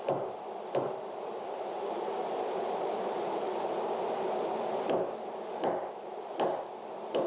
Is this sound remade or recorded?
remade